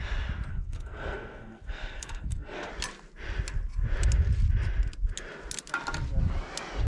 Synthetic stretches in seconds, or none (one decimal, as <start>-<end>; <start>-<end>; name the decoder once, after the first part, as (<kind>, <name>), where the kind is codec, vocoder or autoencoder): 0.5-2.7 (codec, SNAC)